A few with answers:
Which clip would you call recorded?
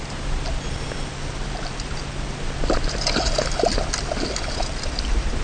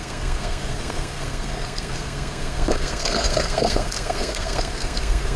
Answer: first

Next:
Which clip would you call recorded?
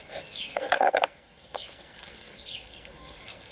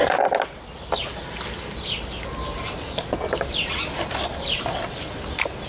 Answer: second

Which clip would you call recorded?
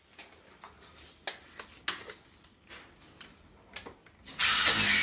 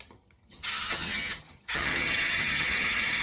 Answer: first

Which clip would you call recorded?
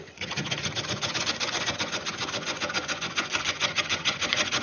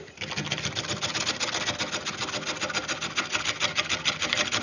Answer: second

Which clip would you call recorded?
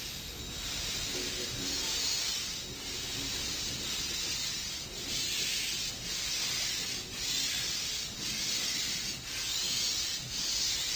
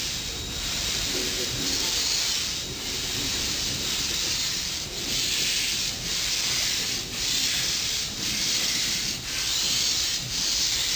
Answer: first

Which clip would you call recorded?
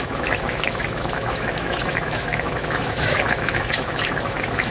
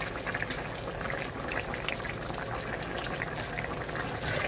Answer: second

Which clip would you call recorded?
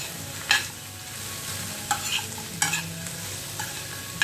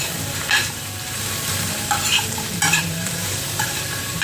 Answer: first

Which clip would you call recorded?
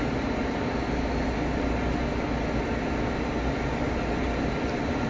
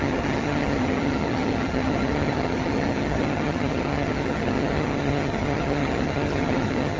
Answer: first